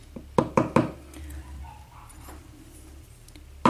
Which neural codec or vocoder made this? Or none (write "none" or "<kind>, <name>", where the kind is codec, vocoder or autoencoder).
none